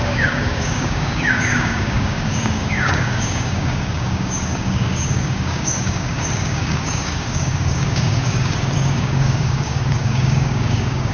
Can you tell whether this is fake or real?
fake